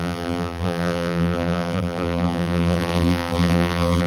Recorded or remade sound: remade